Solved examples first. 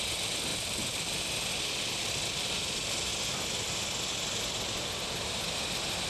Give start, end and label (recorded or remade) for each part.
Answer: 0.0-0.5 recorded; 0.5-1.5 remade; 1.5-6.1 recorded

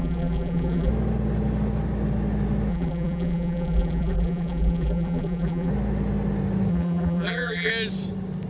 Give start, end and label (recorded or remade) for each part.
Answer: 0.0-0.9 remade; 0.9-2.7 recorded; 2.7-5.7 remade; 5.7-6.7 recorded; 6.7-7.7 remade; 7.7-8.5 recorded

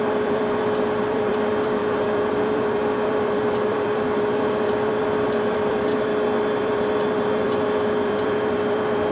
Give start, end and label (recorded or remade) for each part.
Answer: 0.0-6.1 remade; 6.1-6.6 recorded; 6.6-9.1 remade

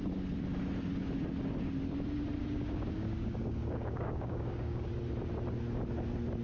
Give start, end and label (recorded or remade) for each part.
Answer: 0.0-2.4 recorded; 2.4-4.9 remade; 4.9-6.4 recorded